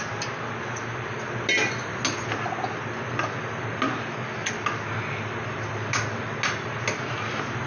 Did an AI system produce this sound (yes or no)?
no